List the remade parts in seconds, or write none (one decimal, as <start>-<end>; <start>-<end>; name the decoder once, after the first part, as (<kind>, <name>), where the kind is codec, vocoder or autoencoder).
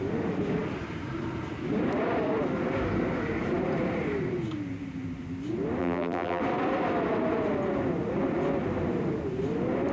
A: 5.8-6.4 (vocoder, BigVGAN v2)